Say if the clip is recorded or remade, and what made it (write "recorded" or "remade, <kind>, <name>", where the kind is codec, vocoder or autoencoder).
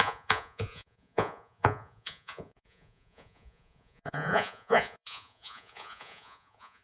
remade, vocoder, Vocos